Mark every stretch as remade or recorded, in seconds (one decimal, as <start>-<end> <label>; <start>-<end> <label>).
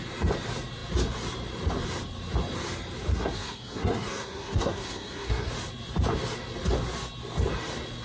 0.0-3.1 recorded; 3.1-5.5 remade; 5.5-8.0 recorded